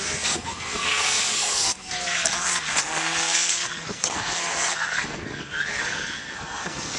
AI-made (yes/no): yes